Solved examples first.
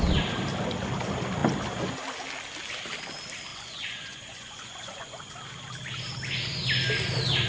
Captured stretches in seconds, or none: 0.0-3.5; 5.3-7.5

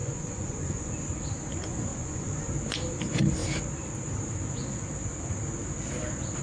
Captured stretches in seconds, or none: 0.9-1.9; 2.5-6.4

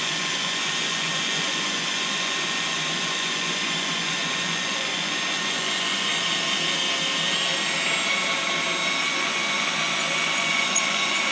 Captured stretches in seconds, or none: 6.1-9.1

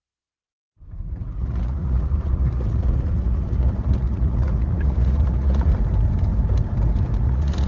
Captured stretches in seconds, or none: 5.7-7.2

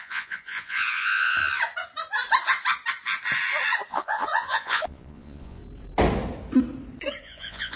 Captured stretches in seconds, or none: 1.4-3.9; 5.6-7.2

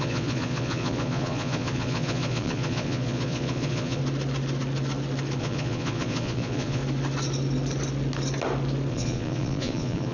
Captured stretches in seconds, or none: 4.0-5.4; 6.8-8.9